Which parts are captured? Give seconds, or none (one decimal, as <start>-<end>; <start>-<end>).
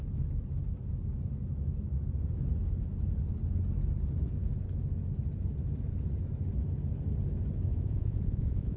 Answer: 0.0-7.7